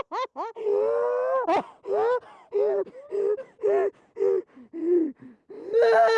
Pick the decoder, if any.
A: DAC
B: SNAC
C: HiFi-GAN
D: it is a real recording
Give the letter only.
D